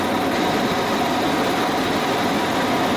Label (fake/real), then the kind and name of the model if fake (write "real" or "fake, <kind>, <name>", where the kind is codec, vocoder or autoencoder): real